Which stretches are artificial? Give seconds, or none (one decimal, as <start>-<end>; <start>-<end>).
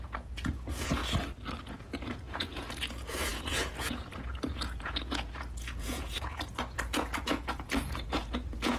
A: 0.0-1.0; 1.6-8.8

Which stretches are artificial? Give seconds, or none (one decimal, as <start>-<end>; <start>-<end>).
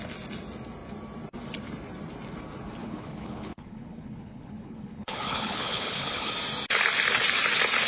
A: 2.8-6.3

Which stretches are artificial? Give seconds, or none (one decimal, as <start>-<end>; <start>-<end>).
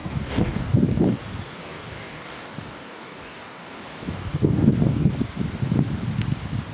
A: 0.0-1.2; 1.6-5.1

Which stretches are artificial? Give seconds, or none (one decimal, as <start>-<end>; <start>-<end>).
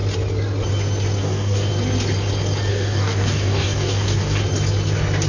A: 1.2-1.7; 2.7-4.4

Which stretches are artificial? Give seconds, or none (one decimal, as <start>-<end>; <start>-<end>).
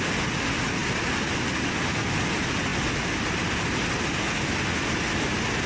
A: none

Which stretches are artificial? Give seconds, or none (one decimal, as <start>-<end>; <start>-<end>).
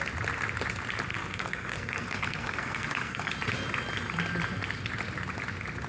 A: 1.1-3.3